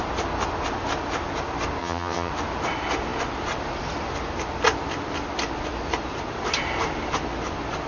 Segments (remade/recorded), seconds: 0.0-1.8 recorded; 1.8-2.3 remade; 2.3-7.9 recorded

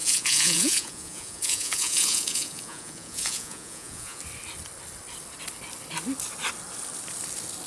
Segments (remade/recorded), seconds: 0.0-4.2 remade; 4.2-7.7 recorded

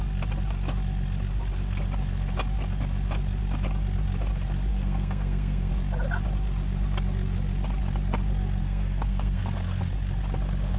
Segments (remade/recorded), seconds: 0.0-4.7 recorded; 4.7-5.7 remade; 5.7-8.6 recorded; 8.6-9.4 remade; 9.4-10.8 recorded